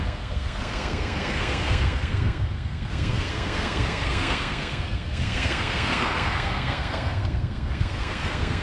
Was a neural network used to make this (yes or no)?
yes